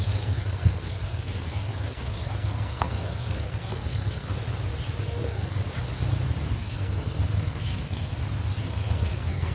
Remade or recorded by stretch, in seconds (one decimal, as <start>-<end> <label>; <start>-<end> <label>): 0.0-4.3 remade; 4.3-5.0 recorded; 5.0-5.6 remade; 5.6-6.5 recorded; 6.5-8.1 remade; 8.1-8.6 recorded; 8.6-9.5 remade